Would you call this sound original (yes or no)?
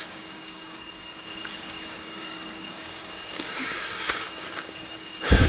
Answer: no